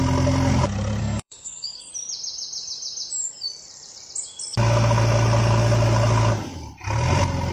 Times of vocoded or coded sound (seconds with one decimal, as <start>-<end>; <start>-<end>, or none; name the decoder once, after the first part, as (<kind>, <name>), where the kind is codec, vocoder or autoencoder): 1.0-1.9 (codec, SNAC)